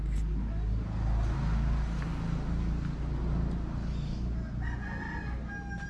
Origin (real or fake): real